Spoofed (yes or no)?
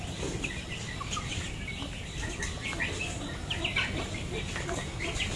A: no